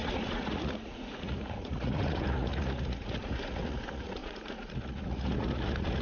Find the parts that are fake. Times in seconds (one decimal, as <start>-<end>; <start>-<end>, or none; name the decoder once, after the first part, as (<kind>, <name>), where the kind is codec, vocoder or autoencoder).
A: 0.0-6.0 (vocoder, Vocos)